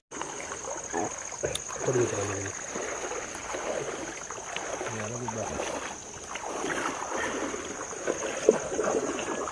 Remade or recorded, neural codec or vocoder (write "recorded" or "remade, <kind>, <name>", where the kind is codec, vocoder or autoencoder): recorded